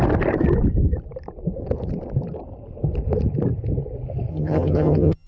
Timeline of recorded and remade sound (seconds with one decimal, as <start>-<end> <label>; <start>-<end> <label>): 0.0-4.3 recorded; 4.3-5.3 remade